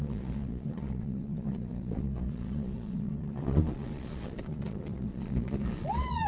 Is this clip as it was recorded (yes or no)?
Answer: no